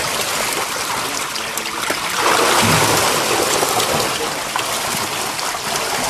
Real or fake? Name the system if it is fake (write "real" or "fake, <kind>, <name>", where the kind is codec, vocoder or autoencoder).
real